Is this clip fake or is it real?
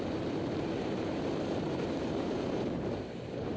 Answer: fake